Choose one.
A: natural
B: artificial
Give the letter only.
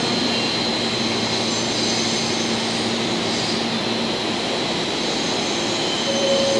A